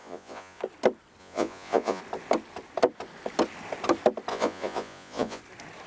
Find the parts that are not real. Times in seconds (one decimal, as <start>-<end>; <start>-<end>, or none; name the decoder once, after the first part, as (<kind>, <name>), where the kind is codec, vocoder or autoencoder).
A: 0.0-0.6 (vocoder, Vocos); 1.2-2.0; 4.3-5.4